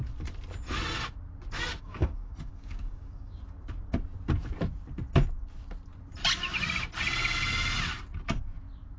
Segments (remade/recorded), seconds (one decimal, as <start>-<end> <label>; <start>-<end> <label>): 0.0-1.7 recorded; 1.7-3.4 remade; 3.4-9.0 recorded